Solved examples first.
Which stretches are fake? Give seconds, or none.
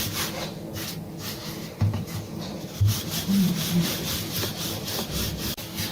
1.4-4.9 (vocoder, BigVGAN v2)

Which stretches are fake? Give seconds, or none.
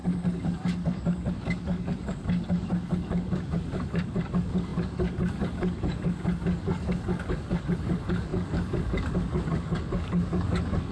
0.0-10.9 (codec, DAC)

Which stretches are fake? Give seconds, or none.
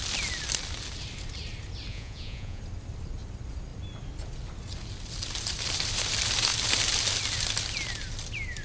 1.9-2.6 (vocoder, Vocos)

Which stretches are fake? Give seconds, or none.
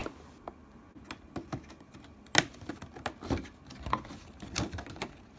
none